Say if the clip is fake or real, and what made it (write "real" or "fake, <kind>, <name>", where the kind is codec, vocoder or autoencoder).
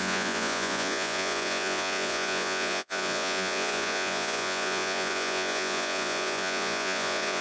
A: fake, vocoder, Vocos